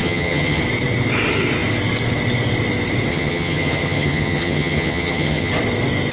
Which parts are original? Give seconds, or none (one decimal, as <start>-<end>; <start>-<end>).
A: 0.6-3.1; 5.5-6.1